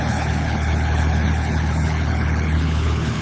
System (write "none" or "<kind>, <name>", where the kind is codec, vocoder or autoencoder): codec, HILCodec